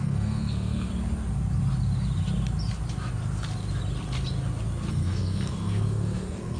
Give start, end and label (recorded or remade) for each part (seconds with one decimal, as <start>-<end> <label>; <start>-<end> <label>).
0.0-0.9 remade; 0.9-4.9 recorded; 4.9-6.6 remade